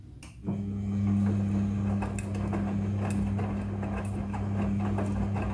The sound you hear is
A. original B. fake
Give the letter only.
A